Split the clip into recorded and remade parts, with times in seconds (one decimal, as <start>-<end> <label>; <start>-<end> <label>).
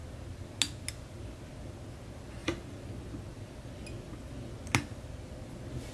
0.0-5.9 recorded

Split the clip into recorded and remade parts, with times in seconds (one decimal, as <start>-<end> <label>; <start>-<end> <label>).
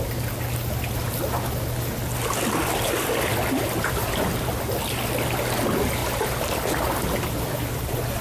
0.0-8.2 recorded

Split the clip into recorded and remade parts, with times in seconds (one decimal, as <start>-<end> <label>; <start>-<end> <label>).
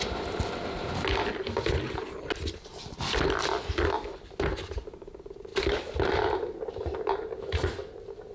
0.0-5.5 recorded; 5.5-6.7 remade; 6.7-8.3 recorded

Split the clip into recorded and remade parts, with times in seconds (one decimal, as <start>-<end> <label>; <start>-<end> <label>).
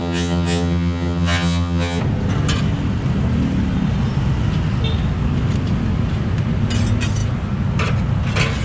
0.0-2.0 remade; 2.0-8.6 recorded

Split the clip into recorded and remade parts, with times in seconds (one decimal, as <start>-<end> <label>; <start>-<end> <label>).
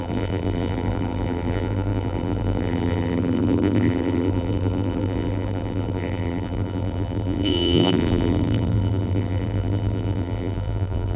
0.0-11.2 remade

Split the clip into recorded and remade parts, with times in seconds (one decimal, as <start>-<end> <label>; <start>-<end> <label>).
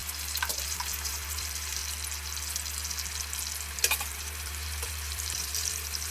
0.0-0.5 recorded; 0.5-1.8 remade; 1.8-3.7 recorded; 3.7-6.1 remade